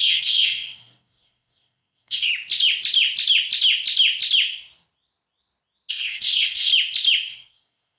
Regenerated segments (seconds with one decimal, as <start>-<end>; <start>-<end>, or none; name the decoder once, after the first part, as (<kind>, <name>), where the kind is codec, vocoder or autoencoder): 0.0-2.3 (codec, SNAC); 5.9-6.7; 7.3-8.0